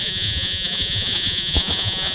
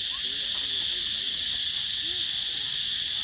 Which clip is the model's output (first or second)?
first